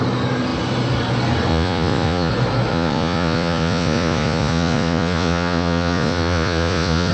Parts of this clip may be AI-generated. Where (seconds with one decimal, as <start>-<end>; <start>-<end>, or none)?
1.5-2.3; 2.7-7.1